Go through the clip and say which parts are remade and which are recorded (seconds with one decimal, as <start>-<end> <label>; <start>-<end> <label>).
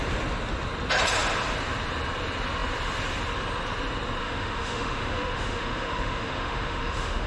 0.0-4.2 recorded; 4.2-7.3 remade